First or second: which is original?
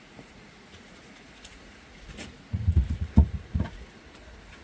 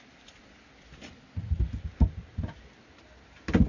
second